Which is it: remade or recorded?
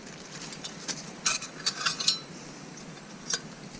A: recorded